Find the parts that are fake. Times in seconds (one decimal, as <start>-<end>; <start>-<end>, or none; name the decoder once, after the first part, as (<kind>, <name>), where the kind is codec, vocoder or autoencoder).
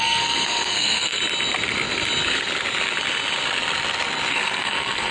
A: 0.0-1.2 (codec, SNAC); 4.3-5.1